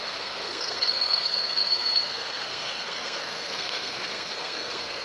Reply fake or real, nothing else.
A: fake